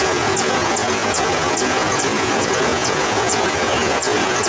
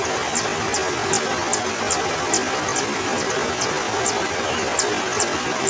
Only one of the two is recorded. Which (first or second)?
second